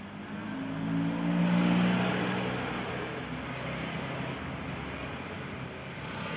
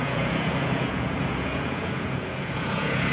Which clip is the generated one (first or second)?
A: second